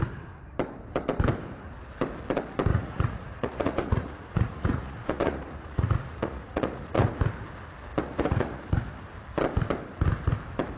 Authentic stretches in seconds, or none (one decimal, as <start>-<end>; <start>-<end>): 0.0-2.7; 7.1-7.9; 8.6-10.8